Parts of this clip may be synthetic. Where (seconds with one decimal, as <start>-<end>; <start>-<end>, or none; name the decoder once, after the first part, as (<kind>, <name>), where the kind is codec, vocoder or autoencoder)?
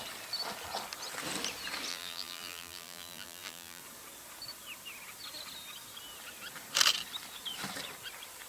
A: 1.9-3.8 (vocoder, BigVGAN v2)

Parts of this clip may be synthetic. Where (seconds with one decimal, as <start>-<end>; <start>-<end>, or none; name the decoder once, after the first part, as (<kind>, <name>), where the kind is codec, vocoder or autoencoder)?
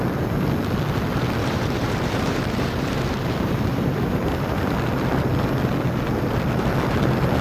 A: 1.4-4.7 (vocoder, BigVGAN v2)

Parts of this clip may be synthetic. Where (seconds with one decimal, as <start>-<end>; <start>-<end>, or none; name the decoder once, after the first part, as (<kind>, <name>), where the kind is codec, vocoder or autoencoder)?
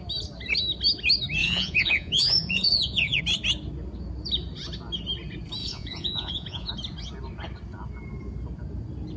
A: 1.4-3.2 (vocoder, Vocos); 5.6-6.7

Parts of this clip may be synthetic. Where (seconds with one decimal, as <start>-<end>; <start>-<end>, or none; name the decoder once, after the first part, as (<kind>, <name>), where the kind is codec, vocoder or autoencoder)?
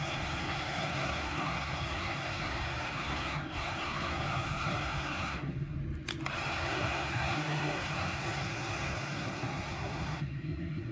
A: 0.0-5.8 (codec, SNAC); 6.5-10.9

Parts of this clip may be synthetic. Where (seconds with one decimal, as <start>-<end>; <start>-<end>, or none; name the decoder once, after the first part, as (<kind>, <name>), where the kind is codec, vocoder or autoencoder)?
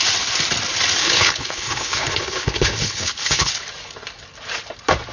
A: 1.0-3.5 (codec, HILCodec)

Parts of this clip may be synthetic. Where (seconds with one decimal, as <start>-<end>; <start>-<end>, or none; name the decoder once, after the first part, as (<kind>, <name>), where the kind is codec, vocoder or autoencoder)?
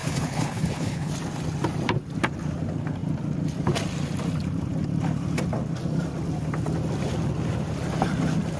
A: 0.0-1.1 (codec, HILCodec)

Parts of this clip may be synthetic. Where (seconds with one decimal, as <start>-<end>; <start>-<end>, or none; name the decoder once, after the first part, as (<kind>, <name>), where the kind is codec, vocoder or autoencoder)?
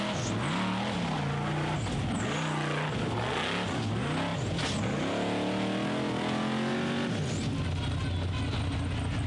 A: none